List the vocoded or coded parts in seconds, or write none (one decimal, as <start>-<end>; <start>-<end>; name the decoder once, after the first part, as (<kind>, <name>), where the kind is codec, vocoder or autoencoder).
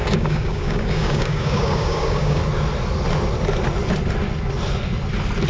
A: 0.0-2.4 (codec, DAC)